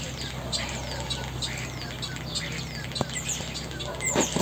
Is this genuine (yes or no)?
yes